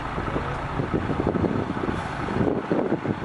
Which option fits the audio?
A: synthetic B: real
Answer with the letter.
B